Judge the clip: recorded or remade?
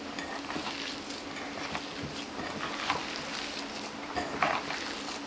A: recorded